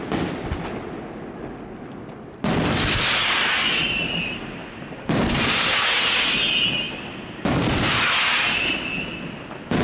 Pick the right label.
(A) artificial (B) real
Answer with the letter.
B